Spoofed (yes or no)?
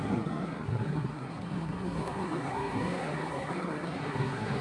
yes